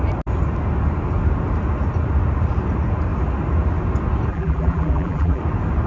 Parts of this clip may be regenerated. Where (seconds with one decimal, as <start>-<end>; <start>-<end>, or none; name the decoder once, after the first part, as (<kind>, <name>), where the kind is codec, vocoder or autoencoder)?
4.3-5.4 (vocoder, BigVGAN v2)